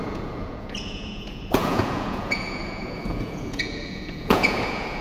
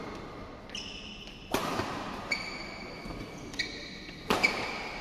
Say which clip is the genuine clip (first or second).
second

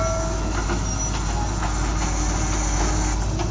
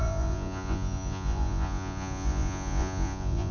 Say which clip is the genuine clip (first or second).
first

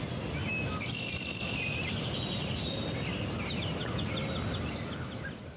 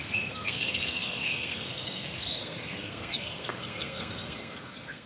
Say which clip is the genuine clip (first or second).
first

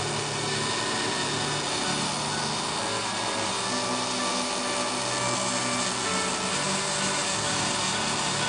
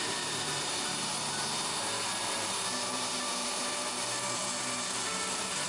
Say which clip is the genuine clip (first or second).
first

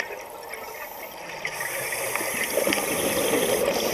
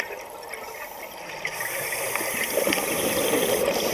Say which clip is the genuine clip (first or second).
first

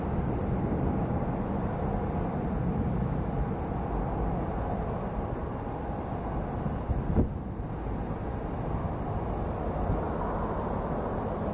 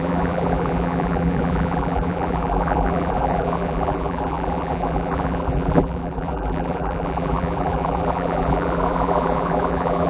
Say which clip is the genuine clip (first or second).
first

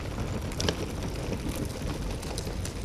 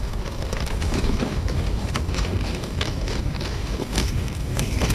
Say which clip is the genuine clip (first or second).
first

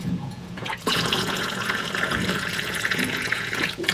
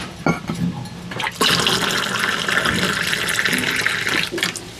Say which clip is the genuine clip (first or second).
second